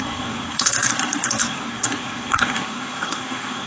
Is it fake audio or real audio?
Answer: fake